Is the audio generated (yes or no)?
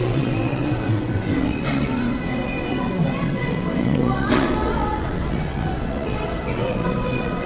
yes